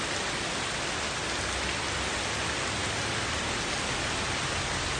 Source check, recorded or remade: recorded